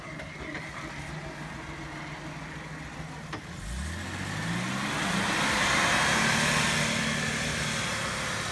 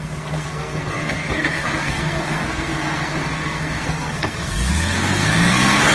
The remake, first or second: second